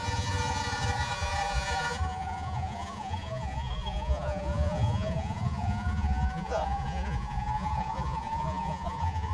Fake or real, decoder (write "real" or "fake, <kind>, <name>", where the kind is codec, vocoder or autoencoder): fake, vocoder, Vocos